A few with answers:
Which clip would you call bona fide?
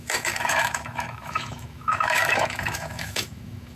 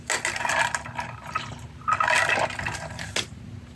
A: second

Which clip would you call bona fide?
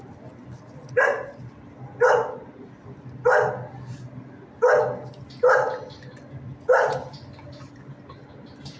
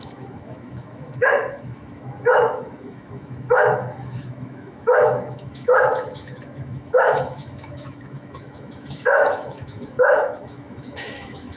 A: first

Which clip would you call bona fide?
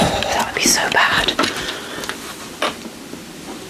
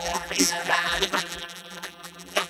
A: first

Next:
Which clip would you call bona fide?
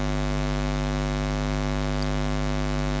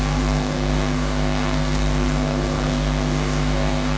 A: first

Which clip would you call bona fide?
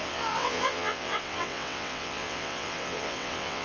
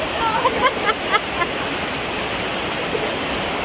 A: second